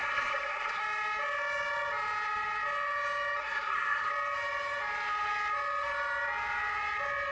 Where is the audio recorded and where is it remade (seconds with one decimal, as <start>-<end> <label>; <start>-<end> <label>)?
0.0-0.8 remade; 0.8-3.4 recorded; 3.4-4.1 remade; 4.1-7.3 recorded

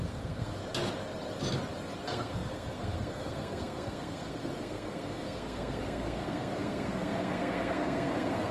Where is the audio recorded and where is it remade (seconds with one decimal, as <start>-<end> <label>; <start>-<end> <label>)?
0.0-0.6 remade; 0.6-2.0 recorded; 2.0-8.5 remade

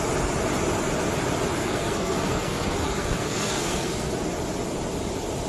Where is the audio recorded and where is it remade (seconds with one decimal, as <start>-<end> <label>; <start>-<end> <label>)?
0.0-1.6 recorded; 1.6-4.1 remade; 4.1-5.5 recorded

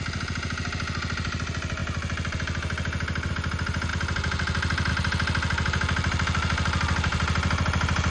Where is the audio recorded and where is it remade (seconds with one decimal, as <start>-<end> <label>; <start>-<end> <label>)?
0.0-8.1 recorded

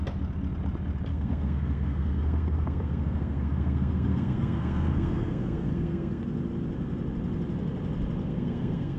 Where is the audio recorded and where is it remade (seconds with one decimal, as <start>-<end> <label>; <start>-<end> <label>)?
0.0-1.1 recorded; 1.1-6.2 remade; 6.2-8.2 recorded; 8.2-9.0 remade

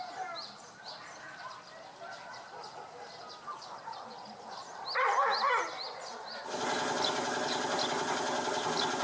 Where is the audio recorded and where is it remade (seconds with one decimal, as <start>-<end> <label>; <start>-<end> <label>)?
0.0-9.0 recorded